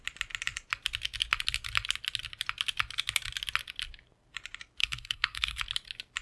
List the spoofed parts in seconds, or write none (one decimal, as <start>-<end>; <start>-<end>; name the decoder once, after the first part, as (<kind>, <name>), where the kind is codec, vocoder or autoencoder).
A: 4.8-5.6 (codec, SNAC)